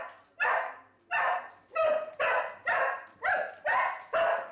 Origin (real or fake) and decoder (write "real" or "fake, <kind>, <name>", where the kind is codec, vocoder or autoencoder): real